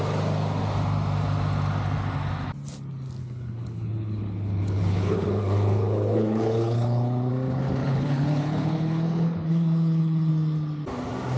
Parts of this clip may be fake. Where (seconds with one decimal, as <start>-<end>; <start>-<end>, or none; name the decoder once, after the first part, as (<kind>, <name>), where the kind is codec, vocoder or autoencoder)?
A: 3.2-7.3 (codec, HILCodec); 7.8-10.3